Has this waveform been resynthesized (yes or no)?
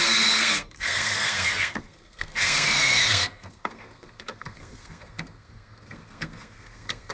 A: yes